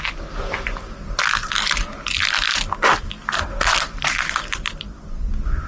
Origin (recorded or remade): recorded